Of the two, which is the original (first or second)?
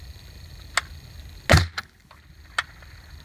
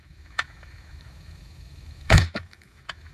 first